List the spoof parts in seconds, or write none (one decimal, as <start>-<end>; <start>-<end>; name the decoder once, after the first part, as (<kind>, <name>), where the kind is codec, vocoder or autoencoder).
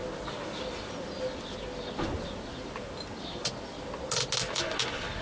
none